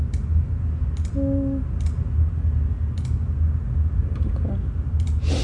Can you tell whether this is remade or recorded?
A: recorded